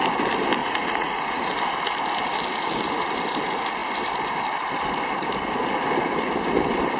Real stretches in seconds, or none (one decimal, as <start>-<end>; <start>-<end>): 0.0-0.6; 1.5-7.0

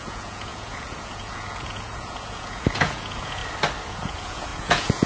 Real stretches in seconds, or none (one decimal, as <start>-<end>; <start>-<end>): 3.4-3.9

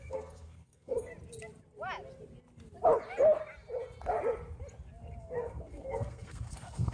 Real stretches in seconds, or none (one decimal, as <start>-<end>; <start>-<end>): 1.1-5.2

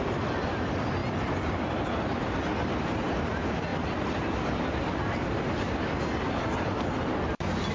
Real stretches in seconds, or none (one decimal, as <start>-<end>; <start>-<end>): 0.0-1.0; 2.8-3.7; 6.0-7.7

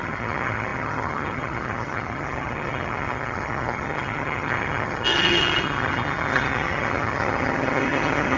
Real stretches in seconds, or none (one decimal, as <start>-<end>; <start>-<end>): none